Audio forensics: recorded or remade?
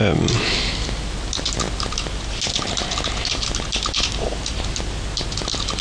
recorded